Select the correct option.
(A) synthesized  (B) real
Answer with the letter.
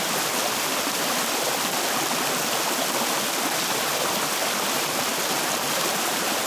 B